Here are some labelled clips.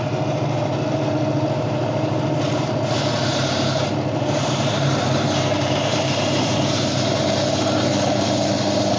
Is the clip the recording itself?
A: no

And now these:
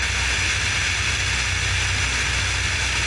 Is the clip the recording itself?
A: yes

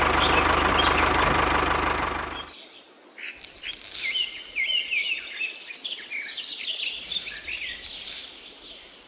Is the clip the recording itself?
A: yes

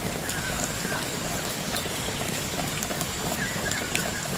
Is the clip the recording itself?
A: no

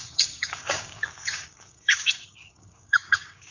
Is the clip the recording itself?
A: no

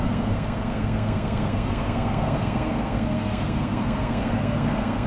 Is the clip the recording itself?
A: no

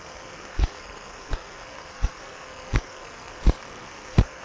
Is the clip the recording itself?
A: no